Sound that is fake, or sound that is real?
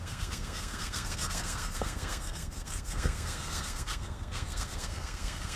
fake